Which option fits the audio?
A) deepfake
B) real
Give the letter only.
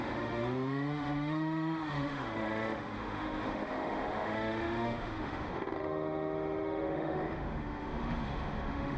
A